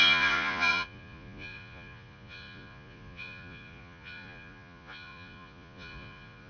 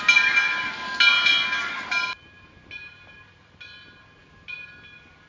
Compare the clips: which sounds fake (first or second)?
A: first